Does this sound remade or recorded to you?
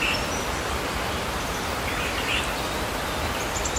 recorded